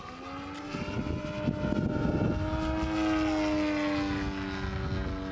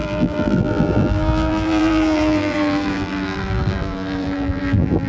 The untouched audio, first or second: first